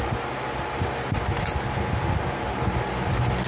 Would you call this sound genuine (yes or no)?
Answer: yes